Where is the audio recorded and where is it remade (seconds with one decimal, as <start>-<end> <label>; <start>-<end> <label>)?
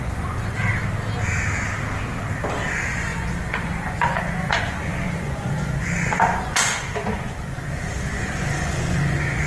0.0-0.8 remade; 0.8-2.7 recorded; 2.7-9.5 remade